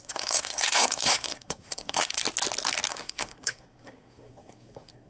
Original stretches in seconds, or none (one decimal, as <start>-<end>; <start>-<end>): 2.2-2.9